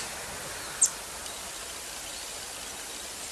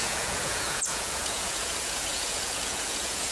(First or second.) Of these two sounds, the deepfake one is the second